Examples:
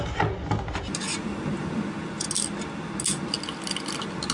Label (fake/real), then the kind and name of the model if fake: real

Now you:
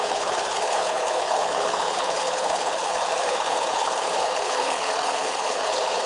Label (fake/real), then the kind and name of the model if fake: fake, codec, HILCodec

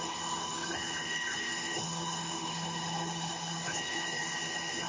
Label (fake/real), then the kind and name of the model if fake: fake, codec, HILCodec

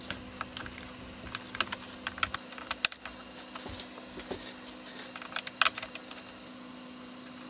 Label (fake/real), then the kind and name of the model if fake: real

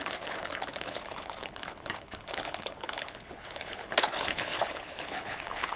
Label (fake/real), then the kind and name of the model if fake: fake, codec, HILCodec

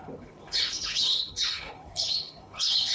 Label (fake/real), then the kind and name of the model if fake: fake, codec, HILCodec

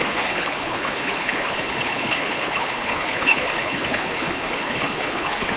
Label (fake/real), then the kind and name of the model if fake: fake, codec, HILCodec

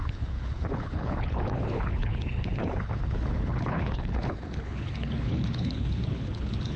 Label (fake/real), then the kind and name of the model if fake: fake, codec, HILCodec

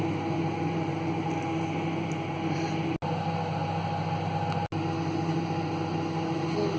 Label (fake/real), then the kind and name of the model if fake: real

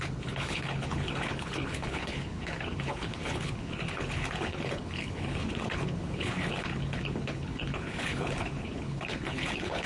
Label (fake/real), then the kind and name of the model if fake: fake, codec, HILCodec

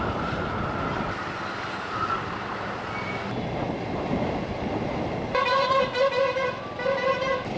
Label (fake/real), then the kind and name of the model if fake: real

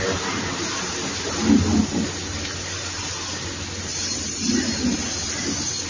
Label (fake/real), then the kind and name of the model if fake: real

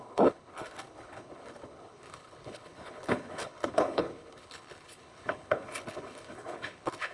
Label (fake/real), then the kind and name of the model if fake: fake, codec, HILCodec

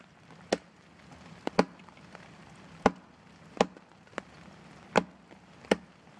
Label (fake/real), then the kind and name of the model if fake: real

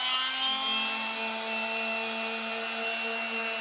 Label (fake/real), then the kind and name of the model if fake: real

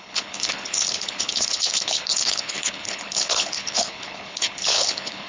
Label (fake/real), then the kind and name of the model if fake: fake, codec, HILCodec